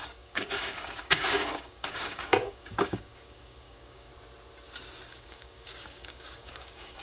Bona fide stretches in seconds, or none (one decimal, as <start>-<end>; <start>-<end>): 4.1-5.1